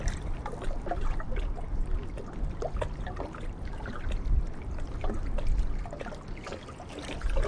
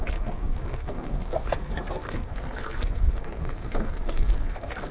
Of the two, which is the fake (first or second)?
second